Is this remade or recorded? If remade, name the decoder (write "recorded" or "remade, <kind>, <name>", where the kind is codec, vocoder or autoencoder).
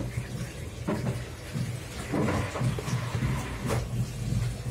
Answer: recorded